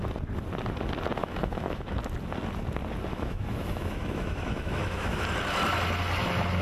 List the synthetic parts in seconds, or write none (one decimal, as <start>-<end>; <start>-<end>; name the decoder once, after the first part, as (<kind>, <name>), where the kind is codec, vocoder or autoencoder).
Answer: 1.2-2.0 (autoencoder, DAC-VAE); 3.1-5.2